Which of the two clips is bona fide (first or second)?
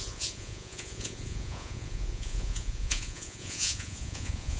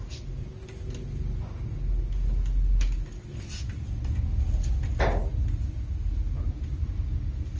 second